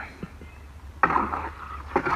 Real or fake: real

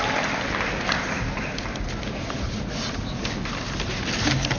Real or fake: real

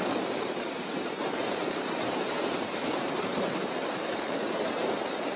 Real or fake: fake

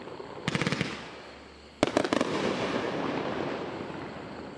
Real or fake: real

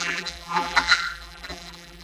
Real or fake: fake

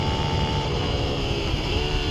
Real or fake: fake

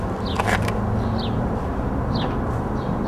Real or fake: real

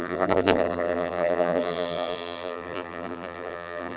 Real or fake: fake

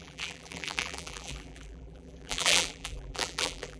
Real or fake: fake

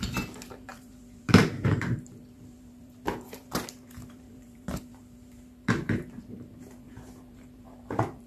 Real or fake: fake